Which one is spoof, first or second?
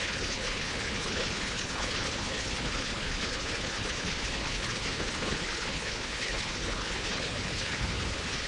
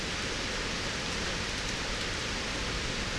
first